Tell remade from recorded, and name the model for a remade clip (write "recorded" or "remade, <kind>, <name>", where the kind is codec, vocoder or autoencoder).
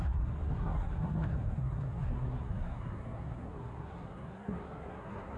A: remade, codec, SNAC